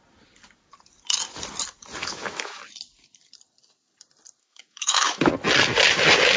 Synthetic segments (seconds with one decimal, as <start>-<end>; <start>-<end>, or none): 2.0-2.6; 4.4-5.3

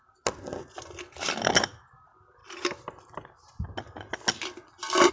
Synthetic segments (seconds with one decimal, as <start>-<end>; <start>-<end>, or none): none

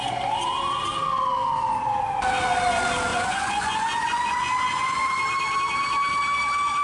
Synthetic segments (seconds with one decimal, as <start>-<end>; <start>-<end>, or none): 3.1-5.2

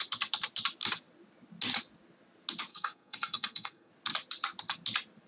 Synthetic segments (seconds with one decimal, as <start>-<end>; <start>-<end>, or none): 2.7-3.9

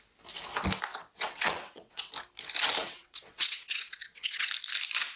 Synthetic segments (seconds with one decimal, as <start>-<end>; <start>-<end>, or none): 0.9-2.1; 2.8-4.5

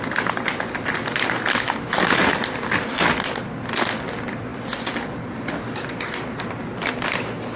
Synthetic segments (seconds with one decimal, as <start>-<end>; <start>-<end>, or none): 4.5-6.2